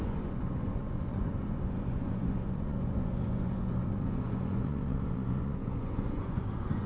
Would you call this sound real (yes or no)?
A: no